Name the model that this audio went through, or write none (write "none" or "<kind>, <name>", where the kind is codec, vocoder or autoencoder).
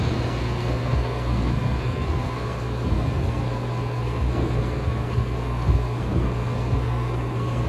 codec, SNAC